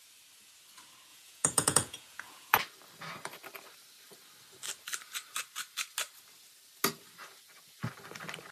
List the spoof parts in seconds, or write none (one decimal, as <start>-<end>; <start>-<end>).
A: 1.1-2.6